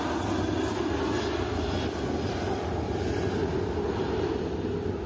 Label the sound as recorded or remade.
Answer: recorded